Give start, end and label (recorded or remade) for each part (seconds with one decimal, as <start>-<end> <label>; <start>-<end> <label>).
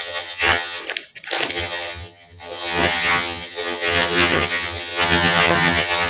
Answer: 0.0-0.8 remade; 0.8-1.5 recorded; 1.5-6.1 remade